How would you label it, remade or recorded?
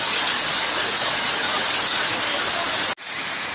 recorded